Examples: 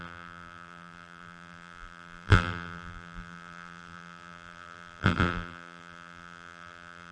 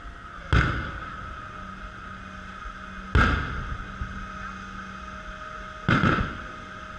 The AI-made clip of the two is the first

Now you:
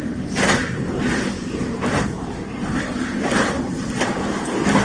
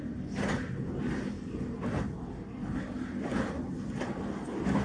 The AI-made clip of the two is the first